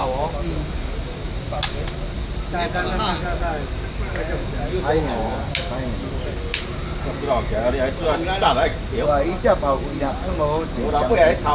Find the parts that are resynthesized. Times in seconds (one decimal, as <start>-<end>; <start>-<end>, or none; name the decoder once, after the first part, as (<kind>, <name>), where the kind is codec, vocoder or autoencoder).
none